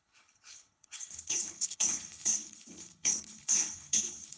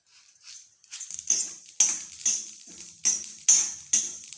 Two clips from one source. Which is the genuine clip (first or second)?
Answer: second